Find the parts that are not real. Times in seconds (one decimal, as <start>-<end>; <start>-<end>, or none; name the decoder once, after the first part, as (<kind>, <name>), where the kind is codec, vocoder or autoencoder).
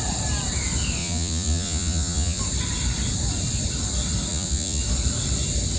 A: 1.0-2.4 (vocoder, Vocos); 4.3-4.8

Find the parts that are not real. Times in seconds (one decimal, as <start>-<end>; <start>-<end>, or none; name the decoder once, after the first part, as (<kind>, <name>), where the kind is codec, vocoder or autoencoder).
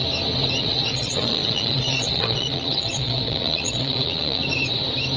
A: 0.6-4.4 (vocoder, Vocos)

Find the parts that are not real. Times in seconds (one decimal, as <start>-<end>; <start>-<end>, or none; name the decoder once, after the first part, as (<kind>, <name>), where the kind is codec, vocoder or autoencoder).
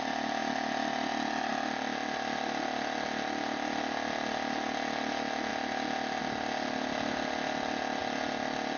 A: none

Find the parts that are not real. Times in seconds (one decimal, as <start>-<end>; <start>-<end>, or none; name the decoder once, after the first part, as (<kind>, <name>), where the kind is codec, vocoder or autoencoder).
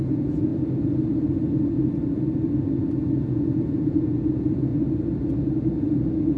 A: 0.0-0.5 (vocoder, Vocos); 3.3-4.7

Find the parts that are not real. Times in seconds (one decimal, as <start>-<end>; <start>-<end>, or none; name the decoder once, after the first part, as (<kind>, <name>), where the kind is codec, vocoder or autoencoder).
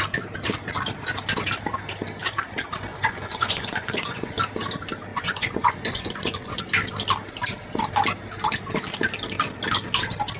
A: 2.9-4.4 (vocoder, Vocos); 5.1-6.6